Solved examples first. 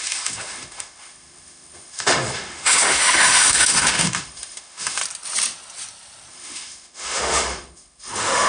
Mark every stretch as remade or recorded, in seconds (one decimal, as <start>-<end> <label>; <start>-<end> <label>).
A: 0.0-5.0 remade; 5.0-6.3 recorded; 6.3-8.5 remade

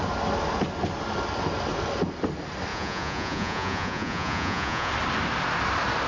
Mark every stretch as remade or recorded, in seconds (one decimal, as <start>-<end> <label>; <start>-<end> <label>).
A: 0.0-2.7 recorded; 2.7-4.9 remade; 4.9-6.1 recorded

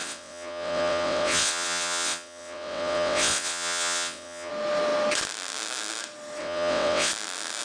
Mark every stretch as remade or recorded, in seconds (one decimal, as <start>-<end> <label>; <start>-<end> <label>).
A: 0.0-4.5 remade; 4.5-6.4 recorded; 6.4-7.1 remade; 7.1-7.6 recorded